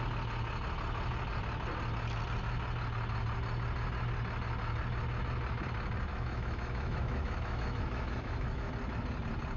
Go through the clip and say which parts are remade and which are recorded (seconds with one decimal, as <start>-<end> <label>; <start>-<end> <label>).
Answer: 0.0-6.1 recorded; 6.1-8.7 remade; 8.7-9.6 recorded